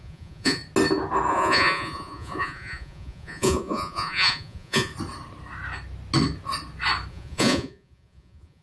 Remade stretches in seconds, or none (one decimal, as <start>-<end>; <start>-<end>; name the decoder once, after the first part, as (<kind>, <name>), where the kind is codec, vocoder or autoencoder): 0.0-0.6 (vocoder, Vocos); 1.3-4.9; 7.1-8.6